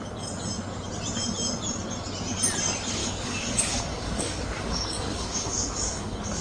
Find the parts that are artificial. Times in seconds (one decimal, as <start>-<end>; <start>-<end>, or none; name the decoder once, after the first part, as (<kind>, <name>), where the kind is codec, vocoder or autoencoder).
3.0-6.4 (codec, DAC)